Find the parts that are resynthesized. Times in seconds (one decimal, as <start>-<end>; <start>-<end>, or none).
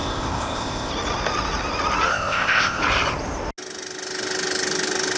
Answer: 0.0-0.9; 2.1-2.8